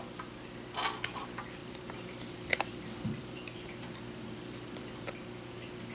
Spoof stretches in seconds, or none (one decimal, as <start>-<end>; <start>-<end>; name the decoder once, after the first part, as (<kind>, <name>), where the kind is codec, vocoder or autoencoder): 1.6-5.1 (vocoder, BigVGAN v2)